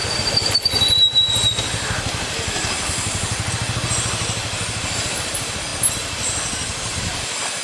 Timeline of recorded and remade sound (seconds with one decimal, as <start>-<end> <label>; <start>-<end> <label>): 0.0-3.5 remade; 3.5-7.6 recorded

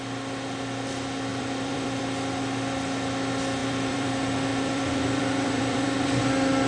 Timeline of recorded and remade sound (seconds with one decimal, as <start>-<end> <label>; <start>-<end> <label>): 0.0-1.3 recorded; 1.3-2.0 remade; 2.0-3.6 recorded; 3.6-4.1 remade; 4.1-4.5 recorded; 4.5-6.2 remade; 6.2-6.7 recorded

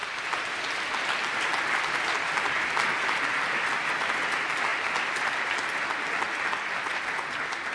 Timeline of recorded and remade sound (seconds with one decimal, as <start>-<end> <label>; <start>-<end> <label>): 0.0-3.9 remade; 3.9-7.7 recorded

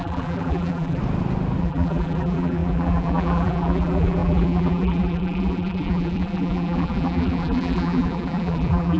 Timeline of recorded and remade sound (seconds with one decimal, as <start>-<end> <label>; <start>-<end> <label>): 0.0-1.0 remade; 1.0-1.6 recorded; 1.6-9.0 remade